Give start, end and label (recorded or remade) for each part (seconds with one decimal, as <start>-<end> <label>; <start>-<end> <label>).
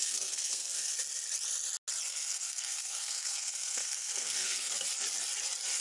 0.0-0.9 remade; 0.9-2.1 recorded; 2.1-4.7 remade; 4.7-5.8 recorded